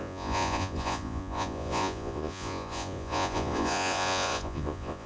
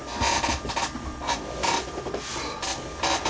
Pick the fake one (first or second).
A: first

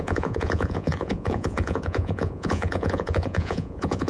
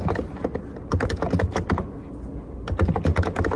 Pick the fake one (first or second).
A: first